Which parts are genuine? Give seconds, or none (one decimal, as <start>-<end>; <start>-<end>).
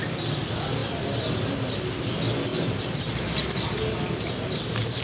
0.0-0.8; 1.7-2.5; 4.0-5.0